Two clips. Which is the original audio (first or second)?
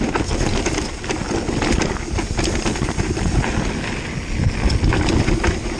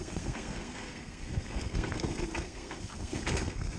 first